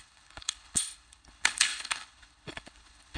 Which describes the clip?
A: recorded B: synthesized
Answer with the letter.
B